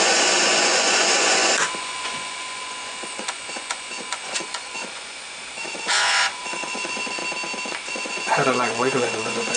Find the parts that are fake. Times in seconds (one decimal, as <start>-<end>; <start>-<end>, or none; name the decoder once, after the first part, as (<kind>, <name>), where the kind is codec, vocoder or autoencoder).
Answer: 0.0-7.2 (vocoder, Vocos); 7.7-9.6